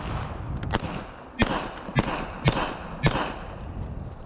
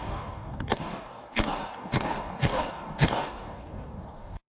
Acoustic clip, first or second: first